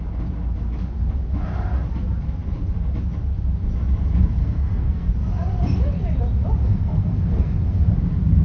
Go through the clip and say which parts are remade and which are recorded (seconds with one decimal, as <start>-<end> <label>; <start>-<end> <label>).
0.0-4.4 recorded; 4.4-5.1 remade; 5.1-6.6 recorded; 6.6-7.8 remade; 7.8-8.4 recorded